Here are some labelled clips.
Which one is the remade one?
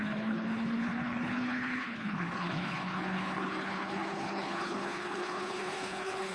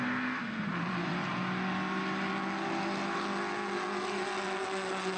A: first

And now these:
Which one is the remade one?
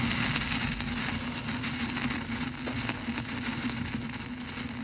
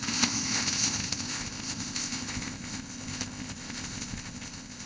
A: second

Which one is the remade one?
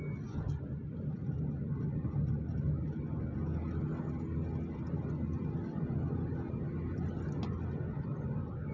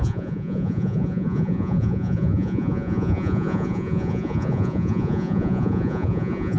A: second